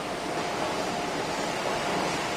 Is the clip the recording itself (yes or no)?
yes